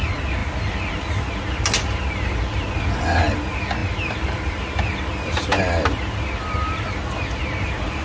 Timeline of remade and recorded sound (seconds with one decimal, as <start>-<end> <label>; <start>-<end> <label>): 0.0-8.0 recorded